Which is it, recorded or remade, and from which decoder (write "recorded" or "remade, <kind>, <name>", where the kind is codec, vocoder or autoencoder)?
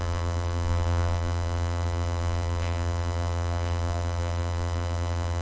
remade, vocoder, BigVGAN v2